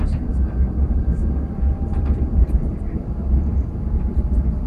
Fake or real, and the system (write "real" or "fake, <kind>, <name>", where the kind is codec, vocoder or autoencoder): fake, vocoder, BigVGAN v2